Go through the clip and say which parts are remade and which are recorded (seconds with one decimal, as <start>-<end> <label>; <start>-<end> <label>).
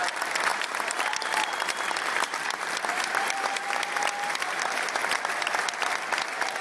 0.0-6.6 remade